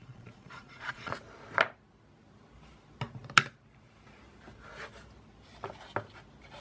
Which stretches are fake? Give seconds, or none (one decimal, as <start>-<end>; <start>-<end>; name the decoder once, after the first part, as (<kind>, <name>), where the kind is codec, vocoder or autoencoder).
0.0-1.1 (vocoder, Vocos)